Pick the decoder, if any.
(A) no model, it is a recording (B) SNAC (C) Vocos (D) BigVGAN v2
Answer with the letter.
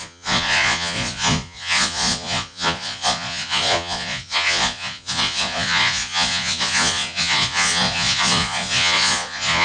C